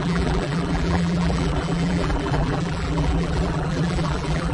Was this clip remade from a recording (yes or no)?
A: yes